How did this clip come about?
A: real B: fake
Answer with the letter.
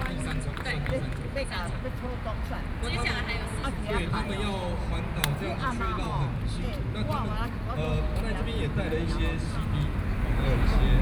A